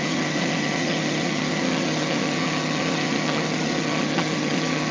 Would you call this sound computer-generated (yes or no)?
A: yes